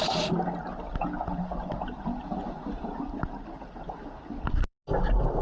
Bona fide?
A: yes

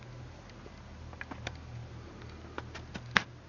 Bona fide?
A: yes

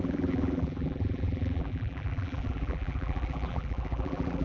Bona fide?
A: no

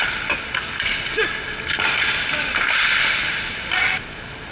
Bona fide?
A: yes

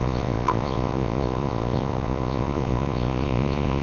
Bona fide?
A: no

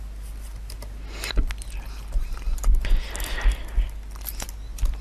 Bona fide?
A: yes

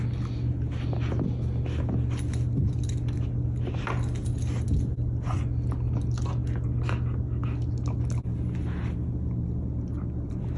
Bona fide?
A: yes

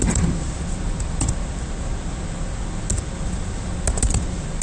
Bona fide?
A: yes